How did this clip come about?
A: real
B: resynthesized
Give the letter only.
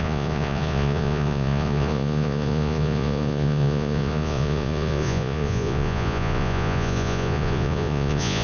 B